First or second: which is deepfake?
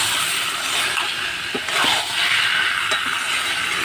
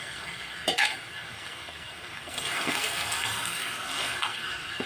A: second